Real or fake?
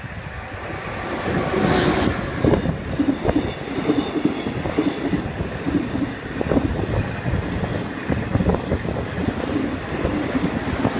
real